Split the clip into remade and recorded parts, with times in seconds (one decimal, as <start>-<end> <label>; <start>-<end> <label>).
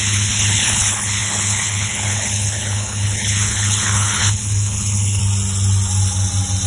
0.0-5.2 remade; 5.2-6.7 recorded